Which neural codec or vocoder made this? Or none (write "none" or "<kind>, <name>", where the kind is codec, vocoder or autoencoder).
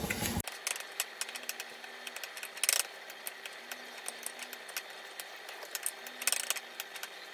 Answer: none